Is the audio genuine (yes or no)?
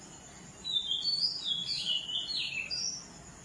yes